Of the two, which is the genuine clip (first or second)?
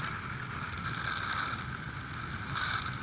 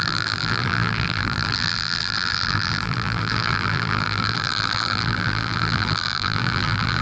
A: first